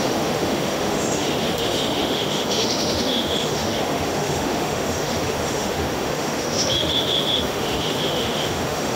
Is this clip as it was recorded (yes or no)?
no